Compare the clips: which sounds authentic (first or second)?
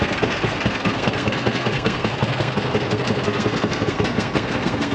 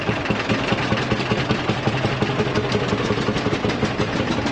second